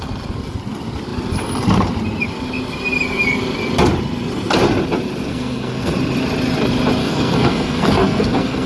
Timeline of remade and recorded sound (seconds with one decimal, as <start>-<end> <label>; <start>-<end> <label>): 0.0-5.3 recorded; 5.3-5.9 remade; 5.9-7.0 recorded; 7.0-8.7 remade